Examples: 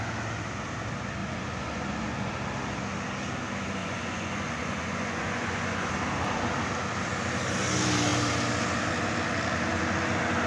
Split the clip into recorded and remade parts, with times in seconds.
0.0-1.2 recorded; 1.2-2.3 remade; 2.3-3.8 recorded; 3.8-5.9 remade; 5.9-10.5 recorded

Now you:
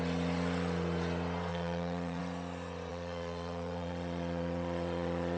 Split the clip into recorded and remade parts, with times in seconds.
0.0-1.5 recorded; 1.5-2.2 remade; 2.2-2.9 recorded; 2.9-5.4 remade

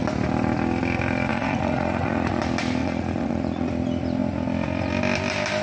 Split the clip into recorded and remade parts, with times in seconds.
0.0-1.3 recorded; 1.3-2.4 remade; 2.4-2.8 recorded; 2.8-3.7 remade; 3.7-5.6 recorded

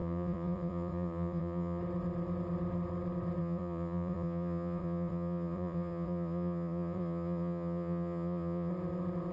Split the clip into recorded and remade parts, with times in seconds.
0.0-1.8 remade; 1.8-3.4 recorded; 3.4-8.7 remade; 8.7-9.3 recorded

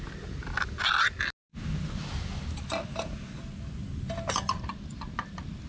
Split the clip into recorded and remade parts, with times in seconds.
0.0-5.7 recorded

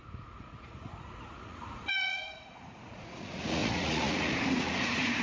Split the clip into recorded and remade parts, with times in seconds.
0.0-5.2 remade

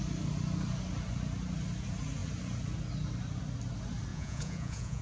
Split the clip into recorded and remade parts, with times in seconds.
0.0-4.1 recorded; 4.1-5.0 remade